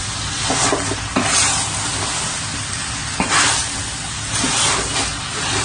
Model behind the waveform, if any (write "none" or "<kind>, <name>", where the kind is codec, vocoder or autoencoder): none